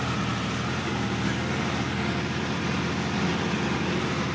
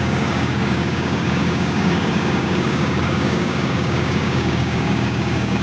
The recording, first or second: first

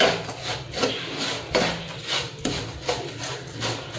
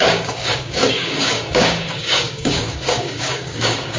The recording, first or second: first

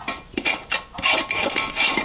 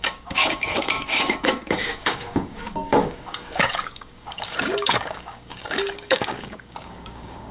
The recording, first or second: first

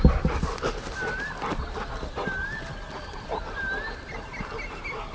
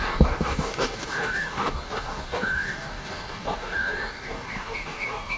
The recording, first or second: first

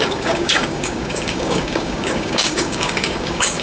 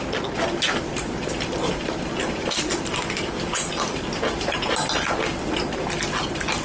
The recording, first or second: second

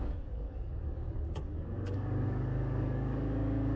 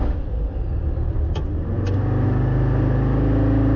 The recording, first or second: second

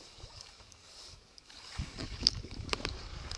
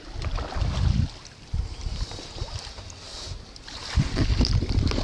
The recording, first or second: second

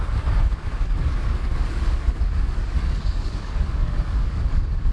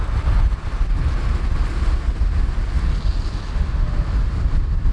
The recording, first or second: second